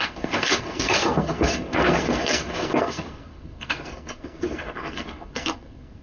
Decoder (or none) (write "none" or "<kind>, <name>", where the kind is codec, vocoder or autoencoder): codec, SNAC